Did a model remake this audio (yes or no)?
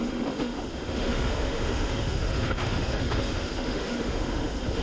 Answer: yes